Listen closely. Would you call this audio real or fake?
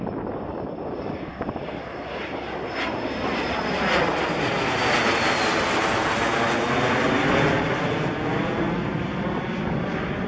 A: real